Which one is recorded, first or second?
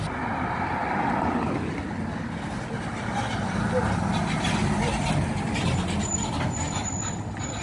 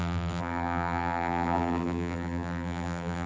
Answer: first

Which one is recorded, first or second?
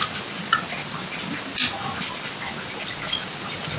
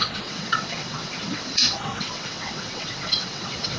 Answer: first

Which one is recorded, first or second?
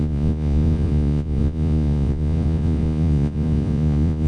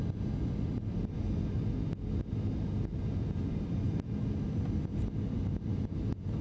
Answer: second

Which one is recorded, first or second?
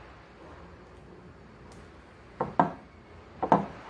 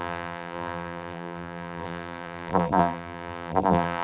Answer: first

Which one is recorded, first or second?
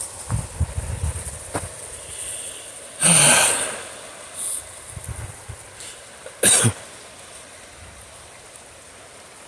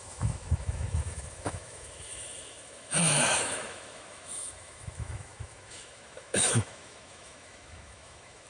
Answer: first